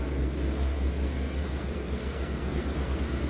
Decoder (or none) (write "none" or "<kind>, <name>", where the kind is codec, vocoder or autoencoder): codec, SNAC